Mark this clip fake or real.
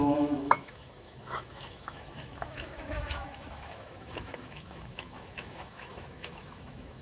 fake